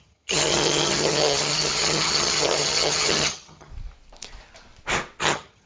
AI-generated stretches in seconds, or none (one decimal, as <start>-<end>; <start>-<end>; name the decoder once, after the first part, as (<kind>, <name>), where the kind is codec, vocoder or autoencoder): 0.0-3.7 (vocoder, HiFi-GAN); 5.2-5.7